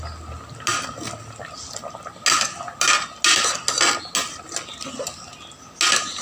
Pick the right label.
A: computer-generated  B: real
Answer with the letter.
B